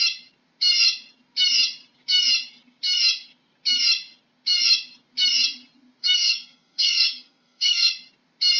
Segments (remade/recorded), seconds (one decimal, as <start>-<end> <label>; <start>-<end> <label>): 0.0-6.0 recorded; 6.0-7.9 remade; 7.9-8.6 recorded